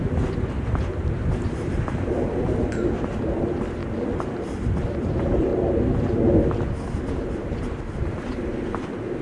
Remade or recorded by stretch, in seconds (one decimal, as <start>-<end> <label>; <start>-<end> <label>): 0.0-3.8 remade; 3.8-4.9 recorded; 4.9-5.5 remade; 5.5-7.1 recorded; 7.1-9.2 remade